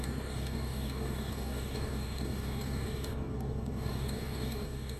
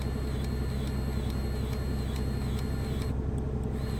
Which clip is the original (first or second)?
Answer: second